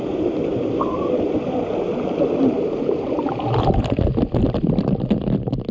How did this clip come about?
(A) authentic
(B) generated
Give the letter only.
A